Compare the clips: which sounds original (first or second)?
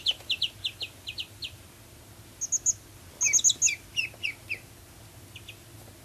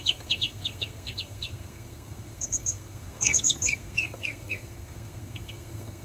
first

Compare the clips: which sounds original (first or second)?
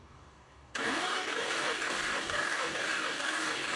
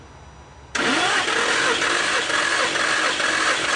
second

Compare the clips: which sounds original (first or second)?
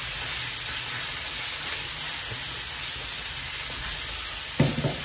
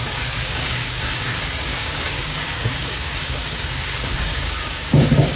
first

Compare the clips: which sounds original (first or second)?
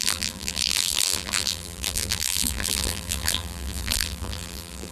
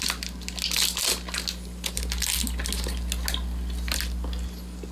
second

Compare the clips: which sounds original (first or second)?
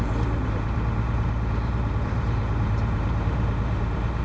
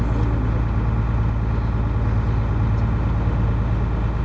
second